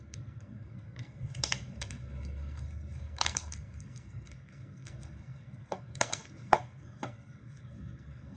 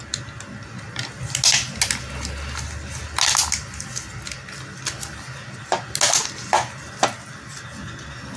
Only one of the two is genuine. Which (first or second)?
second